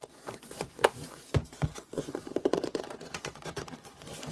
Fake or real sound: fake